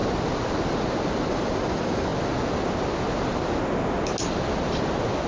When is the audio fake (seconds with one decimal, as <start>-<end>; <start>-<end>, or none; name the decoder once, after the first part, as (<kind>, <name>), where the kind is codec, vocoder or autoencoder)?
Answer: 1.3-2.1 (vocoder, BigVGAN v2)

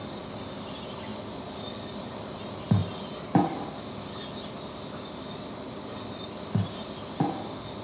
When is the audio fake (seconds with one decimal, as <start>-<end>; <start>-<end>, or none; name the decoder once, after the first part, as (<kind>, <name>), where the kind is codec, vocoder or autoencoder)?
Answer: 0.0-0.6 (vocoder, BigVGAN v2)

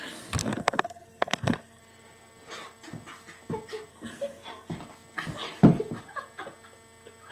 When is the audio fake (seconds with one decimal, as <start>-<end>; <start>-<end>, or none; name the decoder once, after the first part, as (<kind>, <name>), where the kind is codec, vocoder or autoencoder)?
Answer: 0.4-1.8 (codec, SNAC); 3.9-4.7

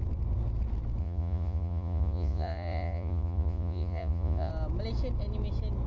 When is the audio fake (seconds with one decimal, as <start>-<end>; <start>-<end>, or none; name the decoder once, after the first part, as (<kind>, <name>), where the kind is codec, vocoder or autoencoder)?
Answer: 1.0-4.5 (vocoder, Vocos)